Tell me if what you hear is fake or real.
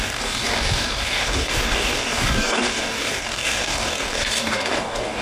fake